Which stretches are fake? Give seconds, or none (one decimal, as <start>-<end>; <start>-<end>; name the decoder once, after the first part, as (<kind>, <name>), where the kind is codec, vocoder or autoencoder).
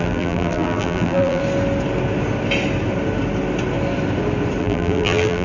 0.0-1.4 (vocoder, BigVGAN v2); 4.6-5.4